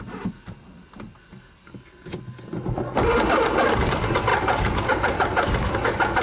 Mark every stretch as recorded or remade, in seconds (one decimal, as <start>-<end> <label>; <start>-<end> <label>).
0.0-6.2 recorded